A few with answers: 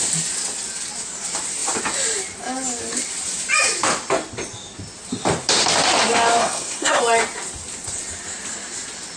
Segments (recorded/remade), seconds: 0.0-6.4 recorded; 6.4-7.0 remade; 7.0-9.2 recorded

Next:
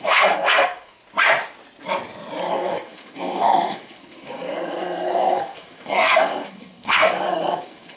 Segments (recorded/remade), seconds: 0.0-1.0 remade; 1.0-2.5 recorded; 2.5-8.0 remade